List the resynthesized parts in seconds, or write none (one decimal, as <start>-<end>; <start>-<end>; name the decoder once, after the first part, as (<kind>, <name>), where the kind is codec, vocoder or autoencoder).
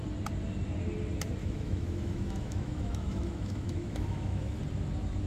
1.4-4.6 (autoencoder, DAC-VAE)